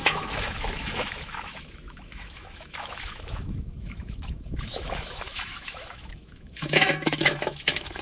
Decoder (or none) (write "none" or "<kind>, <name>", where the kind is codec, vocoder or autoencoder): autoencoder, DAC-VAE